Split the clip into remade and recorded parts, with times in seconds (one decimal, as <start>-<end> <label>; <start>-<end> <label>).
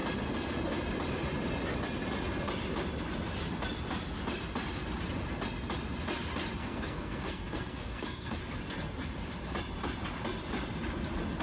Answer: 0.0-6.6 recorded; 6.6-8.4 remade; 8.4-11.4 recorded